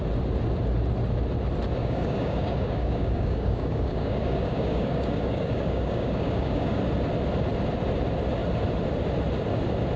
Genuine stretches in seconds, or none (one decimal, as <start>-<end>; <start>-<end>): 0.0-1.8; 6.8-10.0